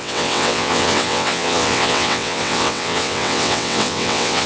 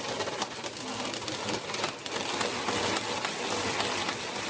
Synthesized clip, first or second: first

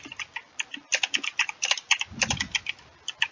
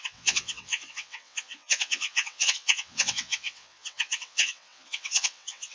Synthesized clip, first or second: second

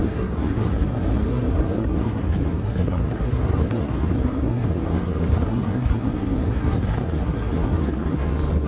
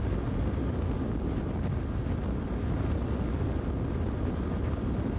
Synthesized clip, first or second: first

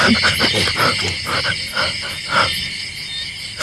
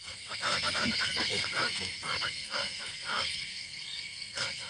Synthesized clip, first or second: second